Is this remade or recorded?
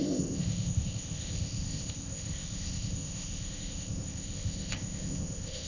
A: remade